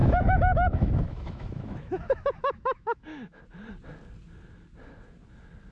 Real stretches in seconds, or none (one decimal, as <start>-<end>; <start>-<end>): 3.4-5.7